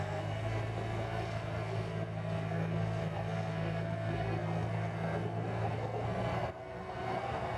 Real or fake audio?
fake